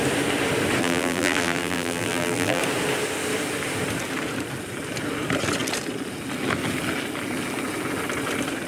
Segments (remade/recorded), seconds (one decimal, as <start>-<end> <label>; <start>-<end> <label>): 0.0-0.8 recorded; 0.8-2.6 remade; 2.6-8.7 recorded